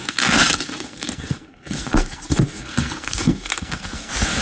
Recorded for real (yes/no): no